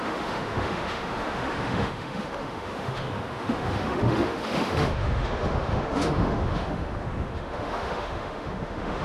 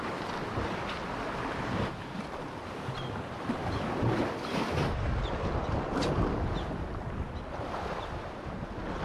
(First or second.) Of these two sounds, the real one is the second